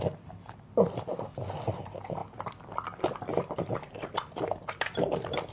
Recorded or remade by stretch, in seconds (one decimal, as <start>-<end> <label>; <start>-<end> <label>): 0.0-2.2 recorded; 2.2-5.5 remade